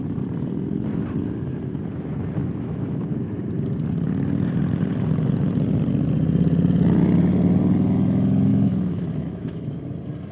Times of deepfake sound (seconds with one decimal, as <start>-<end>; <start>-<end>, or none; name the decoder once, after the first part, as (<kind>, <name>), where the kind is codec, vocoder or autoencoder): 2.4-3.1 (autoencoder, DAC-VAE); 8.5-9.8